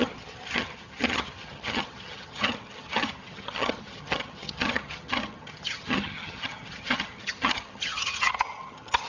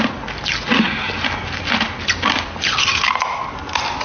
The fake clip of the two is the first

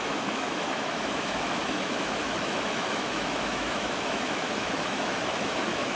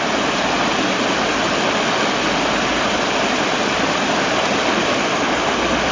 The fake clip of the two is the first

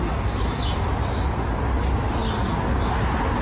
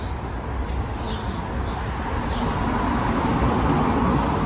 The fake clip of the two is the second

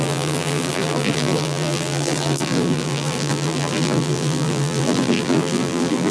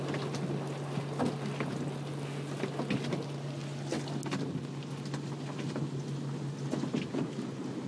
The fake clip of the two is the first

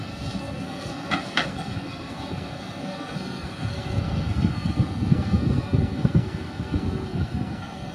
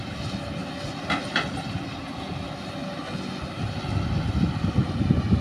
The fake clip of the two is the first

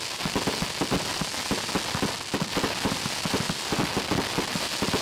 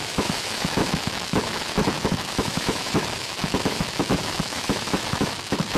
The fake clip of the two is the second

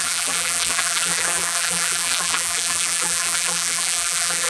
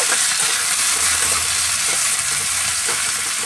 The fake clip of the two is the first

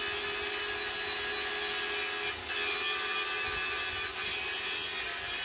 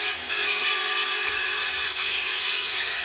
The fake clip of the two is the second